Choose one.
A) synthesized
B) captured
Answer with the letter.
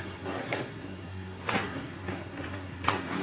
A